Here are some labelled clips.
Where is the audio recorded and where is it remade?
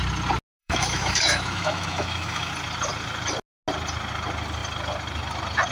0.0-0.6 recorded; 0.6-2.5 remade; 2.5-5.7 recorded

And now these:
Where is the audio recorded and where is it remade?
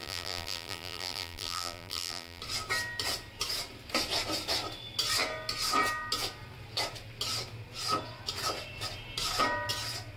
0.0-2.4 remade; 2.4-10.2 recorded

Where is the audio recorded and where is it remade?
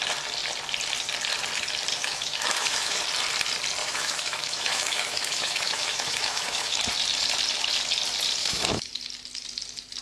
0.0-1.9 recorded; 1.9-3.0 remade; 3.0-3.8 recorded; 3.8-6.8 remade; 6.8-8.4 recorded; 8.4-8.9 remade; 8.9-10.0 recorded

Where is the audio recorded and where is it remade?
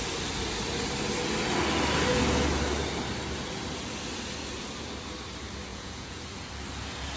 0.0-5.7 recorded; 5.7-6.2 remade; 6.2-7.2 recorded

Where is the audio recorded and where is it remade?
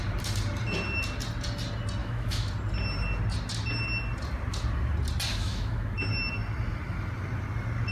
0.0-2.0 recorded; 2.0-2.5 remade; 2.5-5.3 recorded; 5.3-6.0 remade; 6.0-7.9 recorded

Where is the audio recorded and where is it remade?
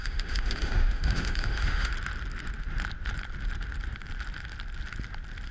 0.0-1.9 remade; 1.9-5.5 recorded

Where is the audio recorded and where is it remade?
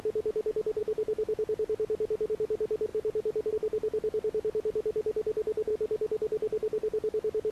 0.0-7.5 recorded